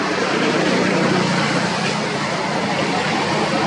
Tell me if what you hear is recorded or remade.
recorded